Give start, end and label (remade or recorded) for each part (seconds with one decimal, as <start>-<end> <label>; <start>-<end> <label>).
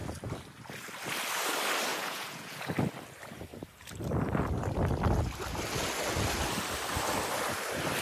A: 0.0-1.9 recorded; 1.9-2.7 remade; 2.7-8.0 recorded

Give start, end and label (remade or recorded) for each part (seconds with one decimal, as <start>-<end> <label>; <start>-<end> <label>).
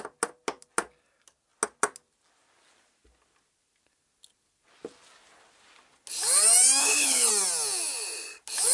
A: 0.0-6.8 recorded; 6.8-7.3 remade; 7.3-8.7 recorded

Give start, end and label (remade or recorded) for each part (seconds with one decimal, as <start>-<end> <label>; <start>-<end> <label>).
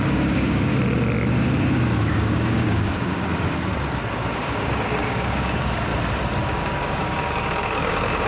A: 0.0-0.7 remade; 0.7-2.1 recorded; 2.1-3.3 remade; 3.3-4.3 recorded; 4.3-5.9 remade; 5.9-6.4 recorded; 6.4-8.3 remade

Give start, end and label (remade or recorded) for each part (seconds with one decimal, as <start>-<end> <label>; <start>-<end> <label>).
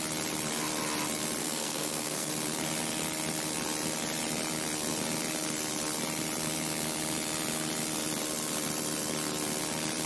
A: 0.0-1.4 recorded; 1.4-2.3 remade; 2.3-10.1 recorded